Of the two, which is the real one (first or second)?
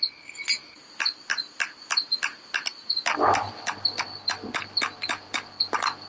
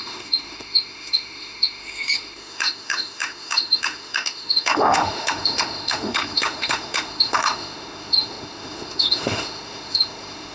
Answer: first